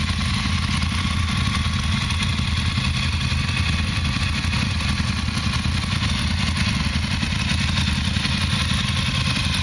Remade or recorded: recorded